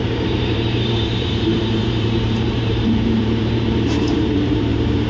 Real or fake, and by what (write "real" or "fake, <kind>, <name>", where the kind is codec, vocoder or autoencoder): fake, vocoder, BigVGAN v2